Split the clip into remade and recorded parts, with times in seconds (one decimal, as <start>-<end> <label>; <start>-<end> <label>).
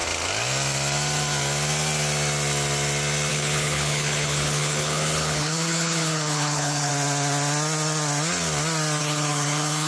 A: 0.0-3.3 recorded; 3.3-6.9 remade; 6.9-9.0 recorded; 9.0-9.9 remade